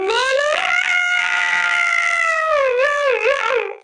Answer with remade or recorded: remade